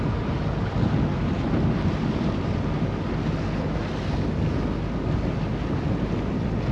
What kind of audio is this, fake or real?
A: real